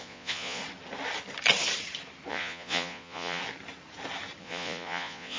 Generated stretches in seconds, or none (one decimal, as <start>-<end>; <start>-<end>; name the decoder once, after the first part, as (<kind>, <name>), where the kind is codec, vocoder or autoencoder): 0.0-0.6 (vocoder, Vocos); 2.3-3.4; 4.4-5.4